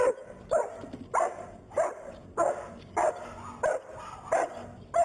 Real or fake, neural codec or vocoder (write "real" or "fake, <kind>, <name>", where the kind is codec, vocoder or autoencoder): real